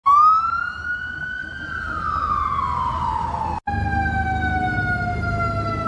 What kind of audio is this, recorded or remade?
recorded